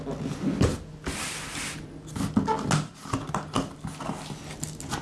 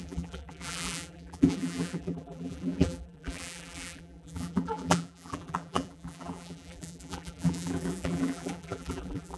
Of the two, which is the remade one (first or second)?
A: second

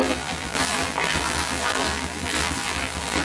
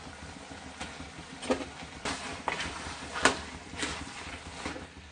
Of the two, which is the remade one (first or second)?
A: first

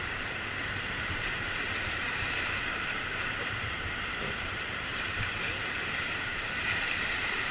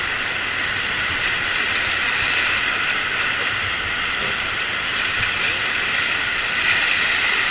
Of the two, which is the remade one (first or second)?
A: first